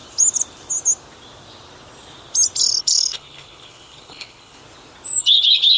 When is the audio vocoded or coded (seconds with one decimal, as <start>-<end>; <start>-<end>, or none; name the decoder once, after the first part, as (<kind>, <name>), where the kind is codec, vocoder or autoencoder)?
2.8-4.6 (codec, HILCodec); 5.2-5.8